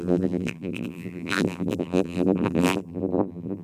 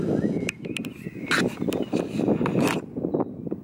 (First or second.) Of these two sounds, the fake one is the first